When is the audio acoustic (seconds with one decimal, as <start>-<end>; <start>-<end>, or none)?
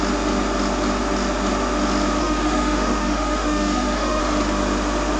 0.0-2.2; 4.2-5.2